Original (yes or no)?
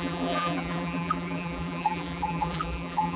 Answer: no